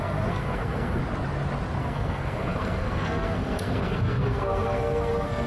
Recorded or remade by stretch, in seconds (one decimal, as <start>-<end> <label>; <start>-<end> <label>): 0.0-1.0 remade; 1.0-1.8 recorded; 1.8-5.5 remade

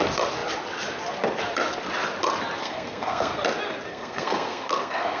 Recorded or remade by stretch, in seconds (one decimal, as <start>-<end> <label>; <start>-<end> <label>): 0.0-2.6 recorded; 2.6-3.4 remade; 3.4-3.9 recorded; 3.9-5.2 remade

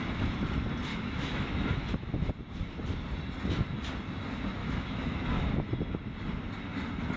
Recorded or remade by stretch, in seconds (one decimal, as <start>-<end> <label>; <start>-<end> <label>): 0.0-0.9 recorded; 0.9-2.3 remade; 2.3-4.6 recorded; 4.6-5.7 remade; 5.7-7.2 recorded

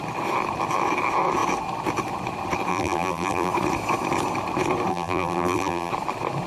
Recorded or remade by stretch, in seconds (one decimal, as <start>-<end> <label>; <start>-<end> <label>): 0.0-2.7 recorded; 2.7-3.5 remade; 3.5-4.9 recorded; 4.9-5.9 remade; 5.9-6.5 recorded